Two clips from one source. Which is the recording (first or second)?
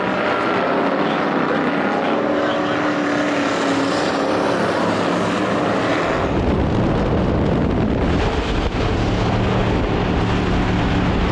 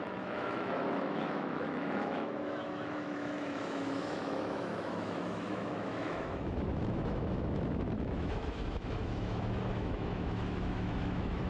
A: first